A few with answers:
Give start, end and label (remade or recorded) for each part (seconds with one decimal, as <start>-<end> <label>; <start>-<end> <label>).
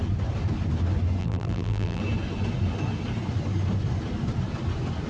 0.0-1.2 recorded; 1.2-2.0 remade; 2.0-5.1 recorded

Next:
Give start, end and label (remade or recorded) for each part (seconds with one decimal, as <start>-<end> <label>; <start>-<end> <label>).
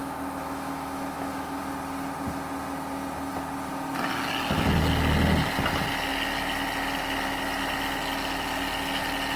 0.0-1.6 remade; 1.6-9.4 recorded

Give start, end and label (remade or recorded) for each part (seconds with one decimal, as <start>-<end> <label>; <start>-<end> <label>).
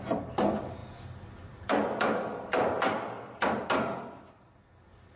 0.0-0.8 recorded; 0.8-3.7 remade; 3.7-5.2 recorded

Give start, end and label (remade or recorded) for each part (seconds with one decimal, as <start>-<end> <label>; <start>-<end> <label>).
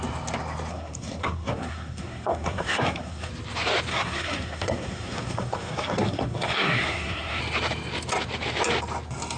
0.0-0.7 recorded; 0.7-3.3 remade; 3.3-3.9 recorded; 3.9-7.4 remade; 7.4-9.4 recorded